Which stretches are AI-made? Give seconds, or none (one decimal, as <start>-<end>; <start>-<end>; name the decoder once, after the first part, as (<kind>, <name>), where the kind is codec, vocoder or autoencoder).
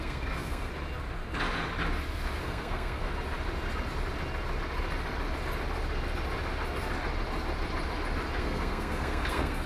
0.0-0.7 (codec, SNAC); 2.4-3.1; 8.4-9.7